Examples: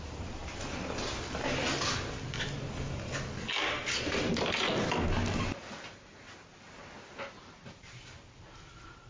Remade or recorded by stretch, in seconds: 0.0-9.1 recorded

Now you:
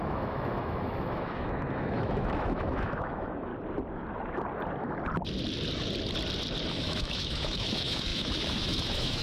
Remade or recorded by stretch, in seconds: 0.0-3.5 remade; 3.5-6.7 recorded; 6.7-9.2 remade

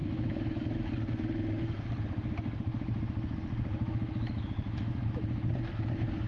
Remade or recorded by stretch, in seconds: 0.0-0.9 remade; 0.9-3.7 recorded; 3.7-5.5 remade; 5.5-6.3 recorded

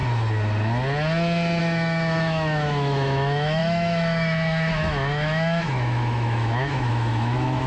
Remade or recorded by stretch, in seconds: 0.0-1.6 recorded; 1.6-7.7 remade

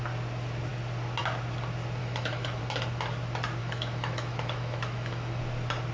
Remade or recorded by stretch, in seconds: 0.0-2.0 recorded; 2.0-2.6 remade; 2.6-3.6 recorded; 3.6-5.4 remade; 5.4-5.9 recorded

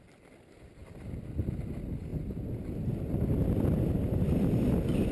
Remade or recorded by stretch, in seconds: 0.0-5.1 recorded

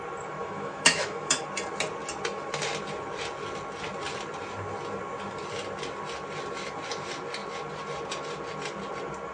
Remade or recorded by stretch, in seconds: 0.0-0.4 recorded; 0.4-1.4 remade; 1.4-9.3 recorded